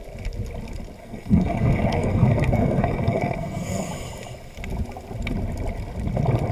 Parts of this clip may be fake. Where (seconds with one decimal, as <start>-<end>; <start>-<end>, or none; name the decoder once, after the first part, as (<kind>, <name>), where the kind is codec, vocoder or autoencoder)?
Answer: 1.0-3.9 (codec, SNAC)